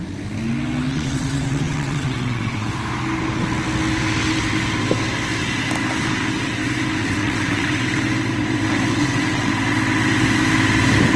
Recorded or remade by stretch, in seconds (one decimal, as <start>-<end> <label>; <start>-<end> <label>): 0.0-0.9 recorded; 0.9-2.7 remade; 2.7-7.0 recorded; 7.0-8.0 remade; 8.0-8.9 recorded; 8.9-9.5 remade; 9.5-11.2 recorded